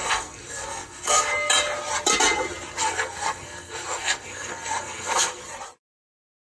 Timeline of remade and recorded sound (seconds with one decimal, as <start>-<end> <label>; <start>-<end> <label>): 0.0-1.3 remade; 1.3-2.8 recorded; 2.8-5.4 remade; 5.4-6.4 recorded